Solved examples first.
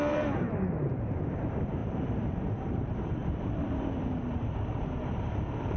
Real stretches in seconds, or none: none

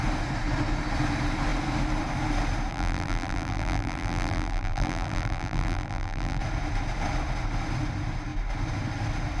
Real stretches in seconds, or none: 0.0-2.7; 6.4-9.4

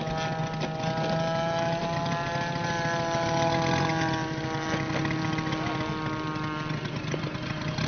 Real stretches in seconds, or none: 0.0-7.9

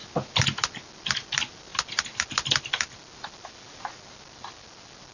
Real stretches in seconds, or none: 0.0-5.1

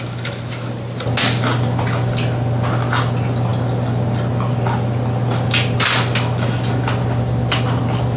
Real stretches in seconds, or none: 0.0-8.2

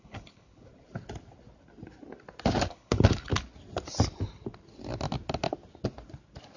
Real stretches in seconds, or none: 0.7-2.7; 3.3-6.6